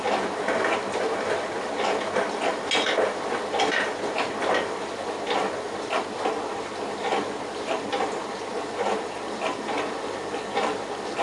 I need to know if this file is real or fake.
real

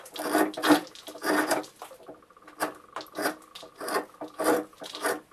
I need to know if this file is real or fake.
real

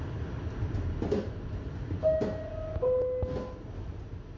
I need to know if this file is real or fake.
real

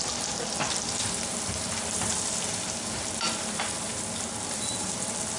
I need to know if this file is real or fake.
fake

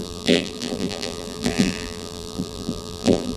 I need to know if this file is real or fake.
fake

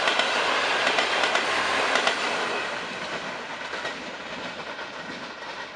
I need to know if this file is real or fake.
real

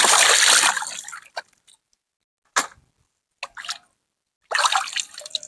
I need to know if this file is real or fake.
real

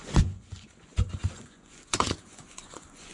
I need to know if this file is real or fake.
fake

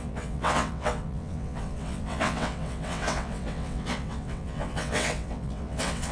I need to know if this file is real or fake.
fake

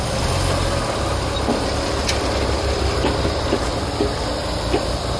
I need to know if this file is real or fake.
real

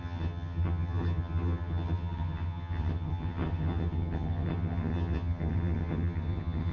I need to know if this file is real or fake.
fake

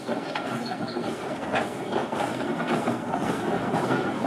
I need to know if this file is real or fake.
fake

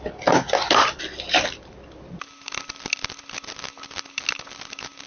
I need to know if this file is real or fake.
real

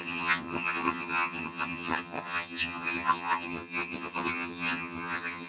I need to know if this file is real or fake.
fake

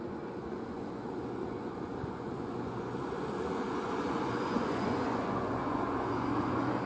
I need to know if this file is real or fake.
fake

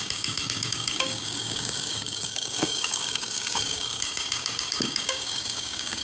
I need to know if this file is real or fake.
fake